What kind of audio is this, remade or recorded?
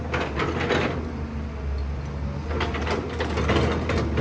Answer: recorded